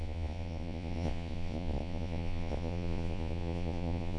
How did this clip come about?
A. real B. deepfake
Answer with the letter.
B